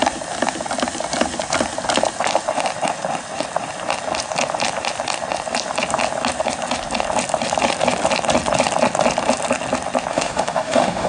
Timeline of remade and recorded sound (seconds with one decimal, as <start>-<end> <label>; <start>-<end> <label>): 0.0-10.1 recorded; 10.1-11.1 remade